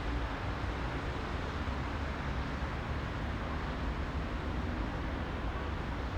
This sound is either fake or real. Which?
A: real